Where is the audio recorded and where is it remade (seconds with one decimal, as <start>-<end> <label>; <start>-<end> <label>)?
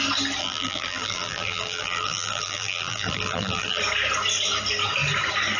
0.0-0.4 recorded; 0.4-3.8 remade; 3.8-5.6 recorded